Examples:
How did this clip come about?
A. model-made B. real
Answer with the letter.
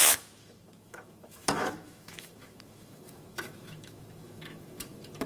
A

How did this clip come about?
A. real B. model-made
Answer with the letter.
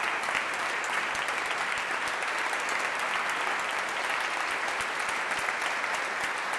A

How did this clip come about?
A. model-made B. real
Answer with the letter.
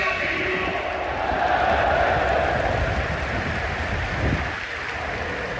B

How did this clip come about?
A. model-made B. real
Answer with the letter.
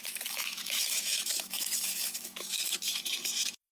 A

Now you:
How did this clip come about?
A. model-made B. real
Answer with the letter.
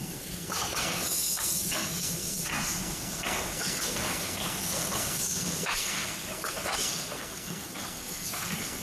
A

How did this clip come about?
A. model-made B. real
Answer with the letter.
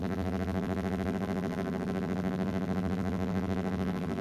A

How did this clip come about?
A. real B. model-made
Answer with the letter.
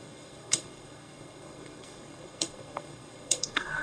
B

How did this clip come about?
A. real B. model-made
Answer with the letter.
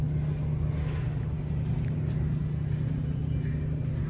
A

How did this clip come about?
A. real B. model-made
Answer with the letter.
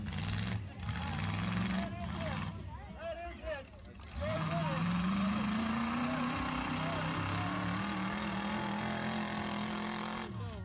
A